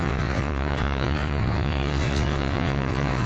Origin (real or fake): fake